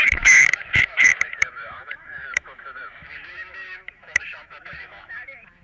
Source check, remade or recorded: remade